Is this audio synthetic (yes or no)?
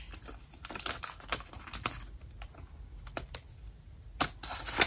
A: no